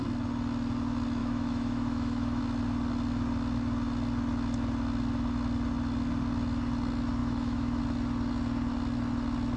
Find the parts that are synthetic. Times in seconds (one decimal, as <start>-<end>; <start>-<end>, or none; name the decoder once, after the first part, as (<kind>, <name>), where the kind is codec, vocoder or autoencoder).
1.2-2.4 (autoencoder, DAC-VAE); 7.2-7.8